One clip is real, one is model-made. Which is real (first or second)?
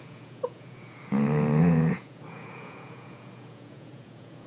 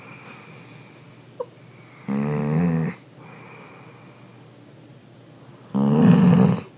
second